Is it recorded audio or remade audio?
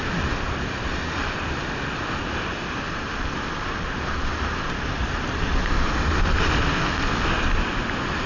recorded